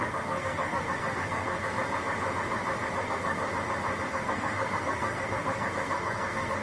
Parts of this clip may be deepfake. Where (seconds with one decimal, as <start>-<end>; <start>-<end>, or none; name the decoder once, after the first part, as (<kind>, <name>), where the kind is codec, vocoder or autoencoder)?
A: 0.0-1.8 (codec, SNAC); 3.0-3.5; 4.1-6.6

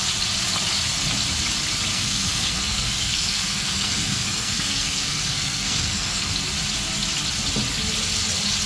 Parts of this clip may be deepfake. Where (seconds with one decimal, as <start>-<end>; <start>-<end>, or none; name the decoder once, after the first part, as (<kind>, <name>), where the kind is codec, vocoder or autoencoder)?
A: 1.9-6.3 (codec, SNAC)

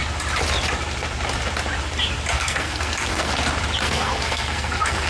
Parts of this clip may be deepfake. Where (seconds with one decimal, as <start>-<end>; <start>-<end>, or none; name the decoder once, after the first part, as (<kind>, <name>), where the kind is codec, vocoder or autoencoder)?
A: 2.3-3.3 (codec, SNAC); 3.8-5.1

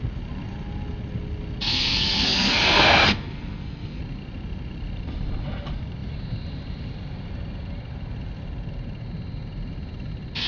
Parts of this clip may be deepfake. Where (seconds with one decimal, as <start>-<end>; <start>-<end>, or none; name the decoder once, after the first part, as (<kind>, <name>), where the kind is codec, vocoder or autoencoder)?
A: 1.7-4.0 (codec, SNAC)

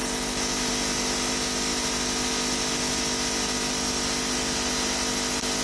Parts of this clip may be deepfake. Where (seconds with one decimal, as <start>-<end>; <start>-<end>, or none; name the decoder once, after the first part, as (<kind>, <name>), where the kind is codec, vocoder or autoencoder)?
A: none

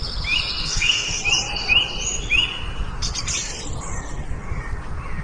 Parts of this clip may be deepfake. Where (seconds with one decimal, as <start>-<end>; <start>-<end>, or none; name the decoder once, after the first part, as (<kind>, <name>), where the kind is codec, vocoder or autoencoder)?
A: 0.6-1.2 (codec, SNAC)